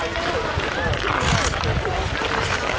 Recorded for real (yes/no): yes